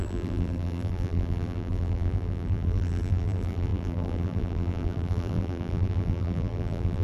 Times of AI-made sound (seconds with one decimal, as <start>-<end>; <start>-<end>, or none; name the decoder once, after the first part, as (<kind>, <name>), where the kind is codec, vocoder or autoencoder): 0.0-7.0 (vocoder, BigVGAN v2)